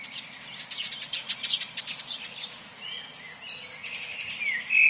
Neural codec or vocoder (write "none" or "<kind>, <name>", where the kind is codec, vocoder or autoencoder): none